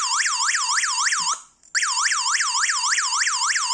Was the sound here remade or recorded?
recorded